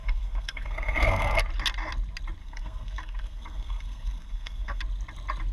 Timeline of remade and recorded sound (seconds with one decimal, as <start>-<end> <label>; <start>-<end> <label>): 0.0-1.4 remade; 1.4-2.4 recorded; 2.4-4.8 remade; 4.8-5.5 recorded